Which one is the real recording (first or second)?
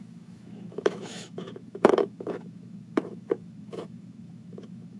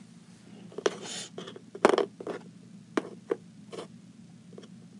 second